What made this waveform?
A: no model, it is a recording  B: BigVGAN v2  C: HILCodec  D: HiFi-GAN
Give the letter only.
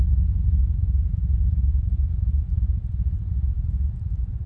B